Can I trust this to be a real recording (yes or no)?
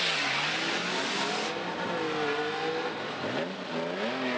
yes